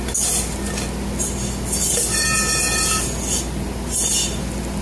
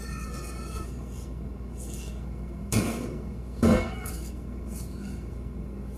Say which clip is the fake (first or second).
second